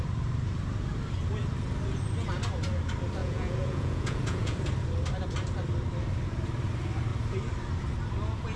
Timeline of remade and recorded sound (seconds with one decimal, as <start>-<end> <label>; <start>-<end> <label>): 0.0-3.2 recorded; 3.2-4.6 remade; 4.6-8.6 recorded